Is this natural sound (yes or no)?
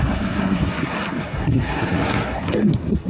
no